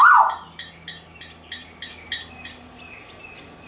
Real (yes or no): yes